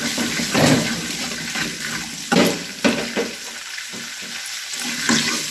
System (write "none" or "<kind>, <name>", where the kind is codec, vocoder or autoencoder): none